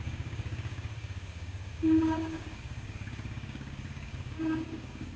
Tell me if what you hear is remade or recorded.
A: remade